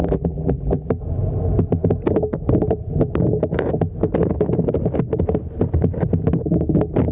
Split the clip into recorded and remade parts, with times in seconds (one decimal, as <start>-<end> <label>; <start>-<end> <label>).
0.0-0.9 remade; 0.9-7.1 recorded